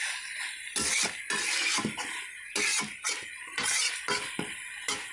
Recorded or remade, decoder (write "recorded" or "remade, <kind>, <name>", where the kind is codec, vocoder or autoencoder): recorded